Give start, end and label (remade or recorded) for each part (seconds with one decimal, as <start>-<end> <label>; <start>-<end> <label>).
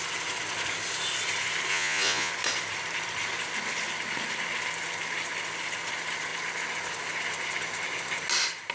0.0-1.7 recorded; 1.7-2.3 remade; 2.3-8.7 recorded